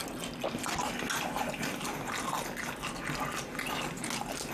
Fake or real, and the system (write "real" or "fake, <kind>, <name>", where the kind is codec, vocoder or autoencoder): real